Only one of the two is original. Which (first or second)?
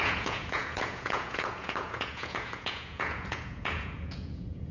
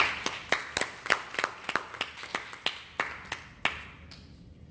second